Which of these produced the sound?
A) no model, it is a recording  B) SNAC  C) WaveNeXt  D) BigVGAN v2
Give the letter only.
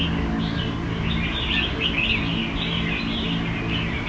A